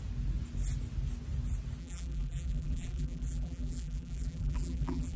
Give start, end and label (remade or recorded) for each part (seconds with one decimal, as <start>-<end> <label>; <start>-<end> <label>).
0.0-1.8 recorded; 1.8-5.2 remade